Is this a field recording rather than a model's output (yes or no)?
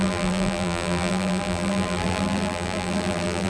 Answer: no